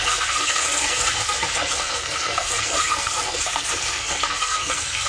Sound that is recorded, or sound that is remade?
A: remade